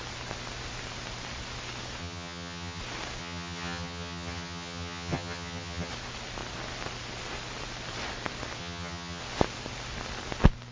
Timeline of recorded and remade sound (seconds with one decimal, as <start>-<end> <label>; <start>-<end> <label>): 0.0-2.0 recorded; 2.0-2.8 remade; 2.8-3.2 recorded; 3.2-5.9 remade; 5.9-8.6 recorded; 8.6-9.2 remade; 9.2-10.7 recorded